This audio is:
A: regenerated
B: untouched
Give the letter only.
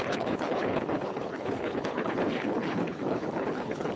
A